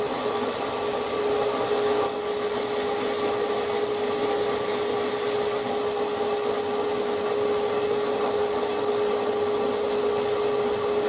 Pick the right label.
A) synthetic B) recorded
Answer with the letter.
B